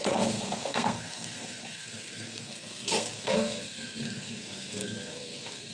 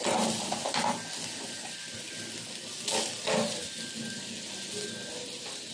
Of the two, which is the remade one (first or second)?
first